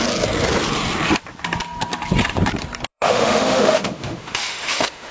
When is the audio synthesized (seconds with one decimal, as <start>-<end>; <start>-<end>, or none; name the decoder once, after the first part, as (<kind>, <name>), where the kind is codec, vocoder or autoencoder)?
2.9-5.1 (autoencoder, DAC-VAE)